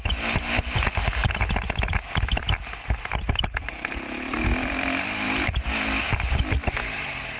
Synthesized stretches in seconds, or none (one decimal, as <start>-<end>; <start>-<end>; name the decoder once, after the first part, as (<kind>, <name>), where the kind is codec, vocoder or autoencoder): 1.2-5.6 (vocoder, BigVGAN v2)

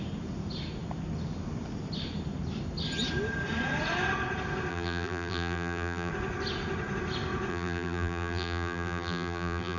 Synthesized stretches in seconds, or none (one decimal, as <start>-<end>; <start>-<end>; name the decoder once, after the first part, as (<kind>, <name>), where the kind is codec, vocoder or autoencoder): 4.7-6.1 (vocoder, BigVGAN v2); 7.5-9.8

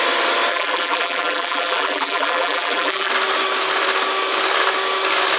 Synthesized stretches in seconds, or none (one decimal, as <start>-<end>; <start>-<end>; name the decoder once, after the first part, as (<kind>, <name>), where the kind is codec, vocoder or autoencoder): 0.5-3.1 (vocoder, BigVGAN v2)